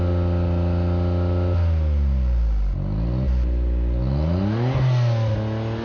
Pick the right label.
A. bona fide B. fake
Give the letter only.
A